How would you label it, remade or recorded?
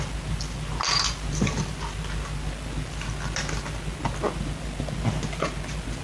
recorded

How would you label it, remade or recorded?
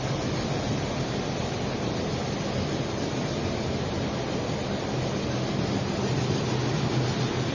recorded